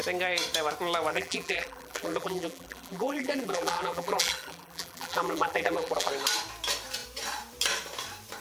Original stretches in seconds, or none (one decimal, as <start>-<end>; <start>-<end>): 0.0-1.1; 6.1-8.4